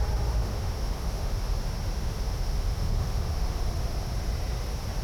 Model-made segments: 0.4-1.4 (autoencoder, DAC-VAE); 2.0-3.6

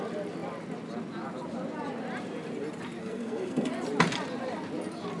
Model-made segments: 3.0-3.7 (codec, SNAC)